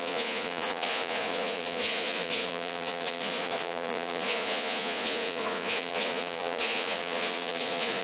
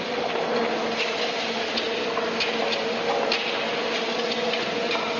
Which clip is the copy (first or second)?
first